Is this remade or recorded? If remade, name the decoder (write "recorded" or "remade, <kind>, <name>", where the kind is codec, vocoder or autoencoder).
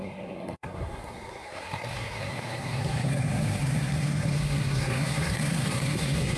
remade, codec, SNAC